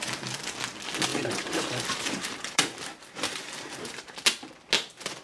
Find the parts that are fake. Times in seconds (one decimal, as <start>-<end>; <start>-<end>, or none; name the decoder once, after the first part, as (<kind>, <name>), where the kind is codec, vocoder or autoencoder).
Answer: 1.1-4.2 (vocoder, BigVGAN v2)